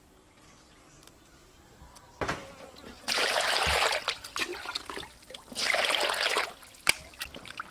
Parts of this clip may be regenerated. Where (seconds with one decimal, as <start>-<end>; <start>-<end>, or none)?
none